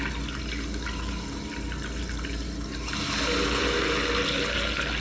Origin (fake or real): real